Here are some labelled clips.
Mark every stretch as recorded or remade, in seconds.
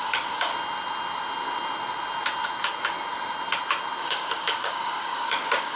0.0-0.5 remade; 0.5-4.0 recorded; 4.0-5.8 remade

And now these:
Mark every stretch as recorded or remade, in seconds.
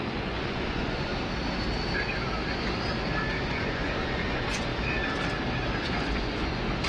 0.0-1.1 remade; 1.1-3.4 recorded; 3.4-4.7 remade; 4.7-5.8 recorded; 5.8-6.9 remade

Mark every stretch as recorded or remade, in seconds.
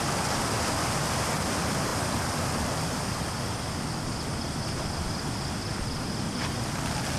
0.0-7.2 recorded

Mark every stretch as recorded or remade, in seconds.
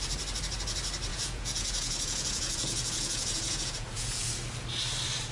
0.0-1.1 recorded; 1.1-4.3 remade; 4.3-5.3 recorded